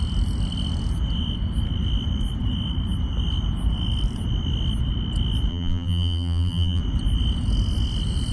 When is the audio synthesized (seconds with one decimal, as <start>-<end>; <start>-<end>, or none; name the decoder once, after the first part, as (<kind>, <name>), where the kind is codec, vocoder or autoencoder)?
5.5-6.8 (vocoder, BigVGAN v2)